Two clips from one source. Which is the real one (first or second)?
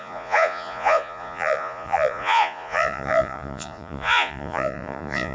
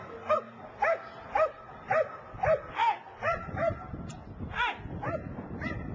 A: second